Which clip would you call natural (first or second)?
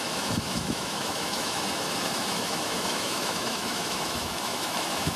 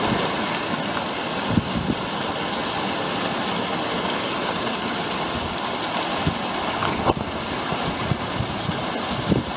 second